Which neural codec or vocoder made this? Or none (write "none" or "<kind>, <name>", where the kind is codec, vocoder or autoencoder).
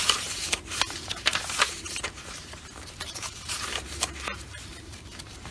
vocoder, BigVGAN v2